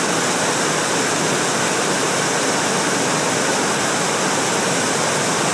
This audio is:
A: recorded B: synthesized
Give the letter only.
A